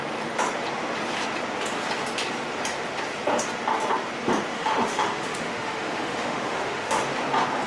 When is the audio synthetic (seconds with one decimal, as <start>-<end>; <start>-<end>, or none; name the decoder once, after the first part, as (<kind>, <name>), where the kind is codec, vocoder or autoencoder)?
4.5-7.0 (autoencoder, DAC-VAE)